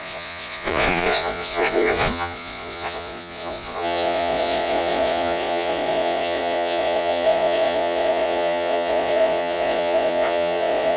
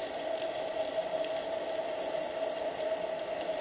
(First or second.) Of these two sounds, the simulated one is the first